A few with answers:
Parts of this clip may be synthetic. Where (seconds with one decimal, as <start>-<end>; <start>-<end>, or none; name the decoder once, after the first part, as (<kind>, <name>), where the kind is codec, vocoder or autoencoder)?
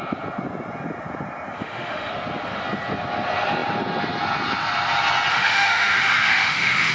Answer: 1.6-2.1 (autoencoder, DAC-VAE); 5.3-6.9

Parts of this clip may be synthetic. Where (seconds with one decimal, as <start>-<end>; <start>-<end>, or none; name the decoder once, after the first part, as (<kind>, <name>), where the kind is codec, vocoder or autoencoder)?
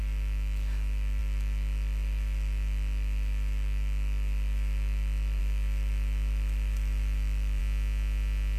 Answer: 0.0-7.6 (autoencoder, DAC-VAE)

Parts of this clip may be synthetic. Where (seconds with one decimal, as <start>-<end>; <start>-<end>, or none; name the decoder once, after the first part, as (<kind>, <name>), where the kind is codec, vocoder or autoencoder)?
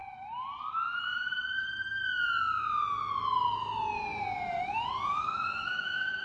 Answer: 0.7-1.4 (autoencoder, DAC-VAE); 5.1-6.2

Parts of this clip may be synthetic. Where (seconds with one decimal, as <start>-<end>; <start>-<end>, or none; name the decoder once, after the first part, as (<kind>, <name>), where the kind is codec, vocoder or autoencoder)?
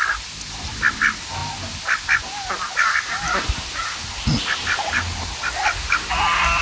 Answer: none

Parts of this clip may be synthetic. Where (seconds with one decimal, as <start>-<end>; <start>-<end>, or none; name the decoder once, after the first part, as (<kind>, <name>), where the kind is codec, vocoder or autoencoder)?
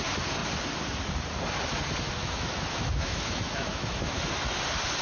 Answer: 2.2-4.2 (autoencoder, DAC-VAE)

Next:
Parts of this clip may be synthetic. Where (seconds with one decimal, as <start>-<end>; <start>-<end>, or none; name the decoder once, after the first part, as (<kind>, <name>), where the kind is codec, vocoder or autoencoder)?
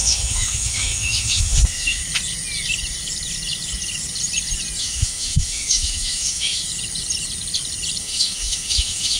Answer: 0.0-2.0 (autoencoder, DAC-VAE); 4.8-6.6; 8.0-9.2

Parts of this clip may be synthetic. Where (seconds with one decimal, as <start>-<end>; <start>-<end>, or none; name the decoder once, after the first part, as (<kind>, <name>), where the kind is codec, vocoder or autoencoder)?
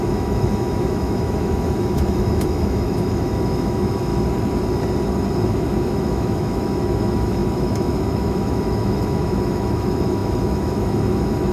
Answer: 0.0-4.1 (autoencoder, DAC-VAE); 5.5-11.5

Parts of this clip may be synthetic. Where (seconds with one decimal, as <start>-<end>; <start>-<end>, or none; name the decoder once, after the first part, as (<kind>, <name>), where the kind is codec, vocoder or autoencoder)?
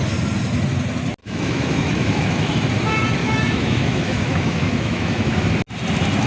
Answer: 1.2-2.5 (autoencoder, DAC-VAE); 3.2-5.5